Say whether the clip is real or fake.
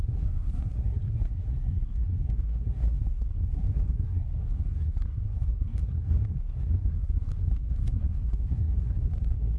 fake